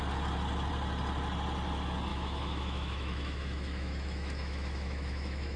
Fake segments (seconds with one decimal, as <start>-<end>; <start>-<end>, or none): 2.1-5.6